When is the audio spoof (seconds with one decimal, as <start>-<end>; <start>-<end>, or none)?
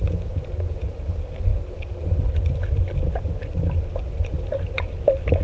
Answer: none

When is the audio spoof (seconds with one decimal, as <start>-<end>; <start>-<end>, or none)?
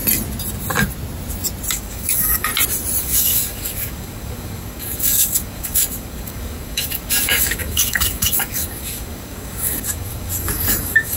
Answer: 1.7-2.5; 3.0-11.2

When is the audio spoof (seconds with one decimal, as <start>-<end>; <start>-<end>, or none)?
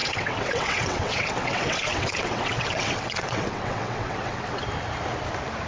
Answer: 0.0-4.6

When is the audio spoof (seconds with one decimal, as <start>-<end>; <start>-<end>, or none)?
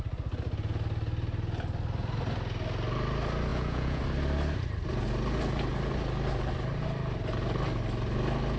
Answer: 3.5-4.0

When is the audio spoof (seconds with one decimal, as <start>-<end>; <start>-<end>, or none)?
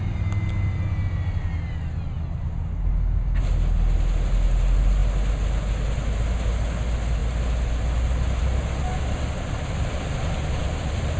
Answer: none